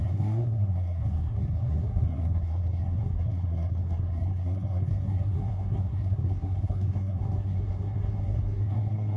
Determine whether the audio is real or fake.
fake